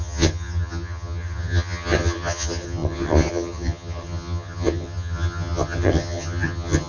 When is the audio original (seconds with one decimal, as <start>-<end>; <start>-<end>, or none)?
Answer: none